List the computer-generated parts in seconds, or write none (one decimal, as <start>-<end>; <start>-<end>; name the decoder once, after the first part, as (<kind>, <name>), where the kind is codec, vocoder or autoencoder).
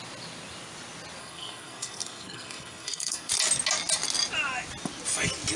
1.2-3.3 (codec, SNAC)